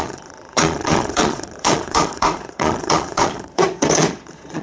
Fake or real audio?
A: fake